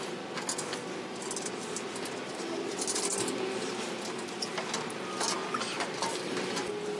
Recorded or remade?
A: recorded